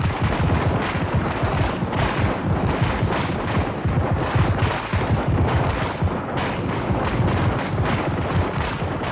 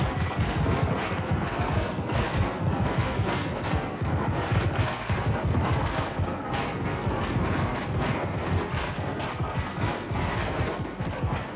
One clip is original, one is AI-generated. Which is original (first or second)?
first